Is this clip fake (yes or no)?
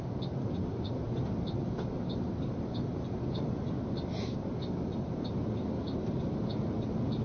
no